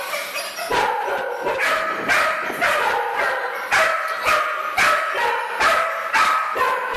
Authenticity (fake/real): real